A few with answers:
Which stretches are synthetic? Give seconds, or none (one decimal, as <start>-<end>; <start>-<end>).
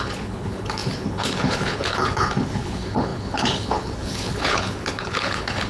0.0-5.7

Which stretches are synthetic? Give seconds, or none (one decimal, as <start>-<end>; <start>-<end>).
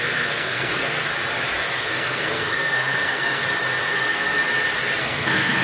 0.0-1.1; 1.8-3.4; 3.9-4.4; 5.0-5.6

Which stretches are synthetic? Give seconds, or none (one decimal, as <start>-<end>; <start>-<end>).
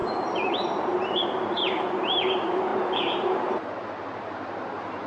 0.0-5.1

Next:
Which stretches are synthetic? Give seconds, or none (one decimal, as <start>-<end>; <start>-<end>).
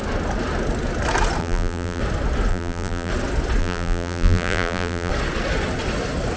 1.4-2.0; 2.5-3.1; 3.6-5.1